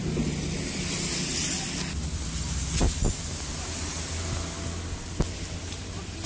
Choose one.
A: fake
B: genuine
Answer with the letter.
B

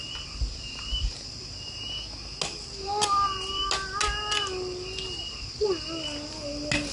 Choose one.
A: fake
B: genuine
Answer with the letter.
B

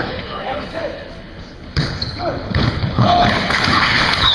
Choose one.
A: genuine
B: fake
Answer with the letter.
B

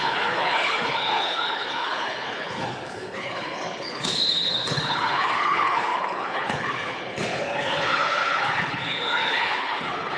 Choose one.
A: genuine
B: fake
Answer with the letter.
B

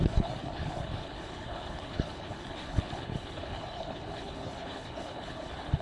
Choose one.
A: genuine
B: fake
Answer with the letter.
B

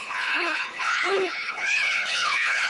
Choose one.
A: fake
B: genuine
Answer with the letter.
A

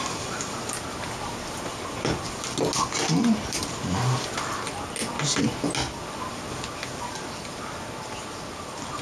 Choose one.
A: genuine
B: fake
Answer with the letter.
A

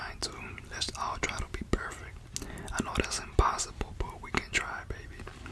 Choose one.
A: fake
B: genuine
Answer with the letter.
B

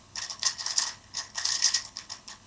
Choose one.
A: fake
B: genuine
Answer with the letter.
A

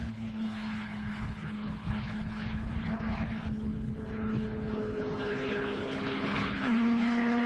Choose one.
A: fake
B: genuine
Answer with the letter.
A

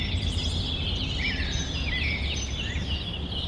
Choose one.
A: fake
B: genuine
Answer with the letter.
B